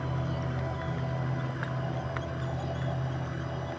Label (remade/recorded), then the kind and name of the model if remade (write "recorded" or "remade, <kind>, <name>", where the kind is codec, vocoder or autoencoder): recorded